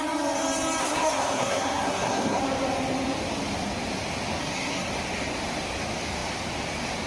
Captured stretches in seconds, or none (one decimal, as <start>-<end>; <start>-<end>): 0.0-0.8; 2.4-4.4; 4.9-7.1